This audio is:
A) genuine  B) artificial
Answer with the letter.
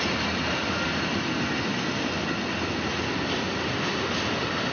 A